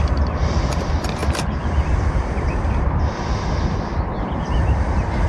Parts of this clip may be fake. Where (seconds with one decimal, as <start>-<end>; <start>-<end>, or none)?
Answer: none